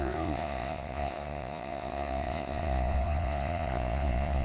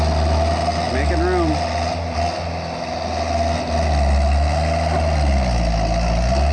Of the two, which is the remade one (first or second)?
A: first